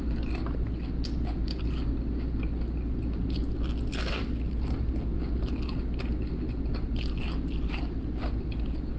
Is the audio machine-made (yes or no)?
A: no